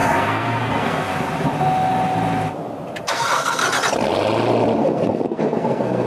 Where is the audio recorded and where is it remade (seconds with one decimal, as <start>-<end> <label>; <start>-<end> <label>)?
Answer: 0.0-1.1 remade; 1.1-3.0 recorded; 3.0-3.6 remade; 3.6-4.8 recorded; 4.8-6.1 remade